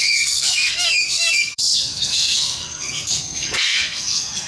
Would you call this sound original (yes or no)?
no